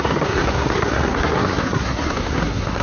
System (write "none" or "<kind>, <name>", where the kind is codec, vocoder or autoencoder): codec, SNAC